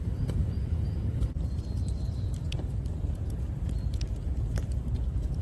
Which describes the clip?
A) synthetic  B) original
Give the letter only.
A